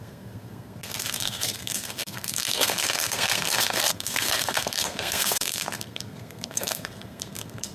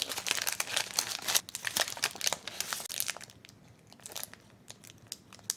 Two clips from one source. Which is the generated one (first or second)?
first